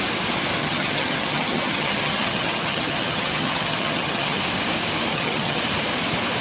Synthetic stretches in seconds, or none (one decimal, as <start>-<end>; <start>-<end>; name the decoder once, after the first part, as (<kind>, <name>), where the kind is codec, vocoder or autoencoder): 0.6-4.4 (vocoder, HiFi-GAN); 5.1-5.6